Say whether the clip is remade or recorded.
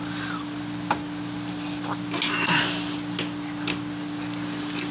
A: recorded